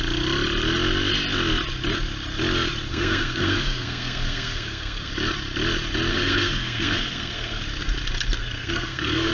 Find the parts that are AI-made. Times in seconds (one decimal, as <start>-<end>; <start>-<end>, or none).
2.9-5.1; 6.1-7.6; 8.4-9.3